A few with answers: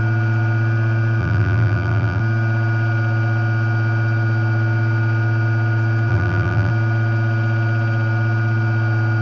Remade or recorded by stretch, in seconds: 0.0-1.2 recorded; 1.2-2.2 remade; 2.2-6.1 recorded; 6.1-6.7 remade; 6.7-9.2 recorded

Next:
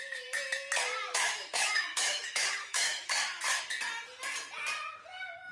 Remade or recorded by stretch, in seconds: 0.0-1.1 recorded; 1.1-3.6 remade; 3.6-5.5 recorded

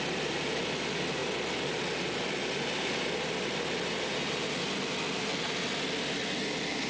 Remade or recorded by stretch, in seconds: 0.0-6.9 recorded

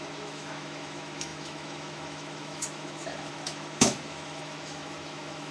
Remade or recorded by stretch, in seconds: 0.0-5.5 remade

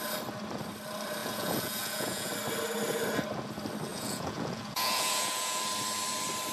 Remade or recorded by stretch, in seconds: 0.0-1.2 recorded; 1.2-2.3 remade; 2.3-3.9 recorded; 3.9-5.6 remade; 5.6-6.5 recorded